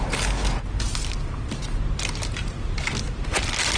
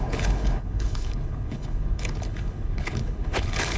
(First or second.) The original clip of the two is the first